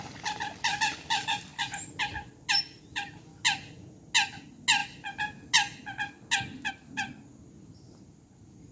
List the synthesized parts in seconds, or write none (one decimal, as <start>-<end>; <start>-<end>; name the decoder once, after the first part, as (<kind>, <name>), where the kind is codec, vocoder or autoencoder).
none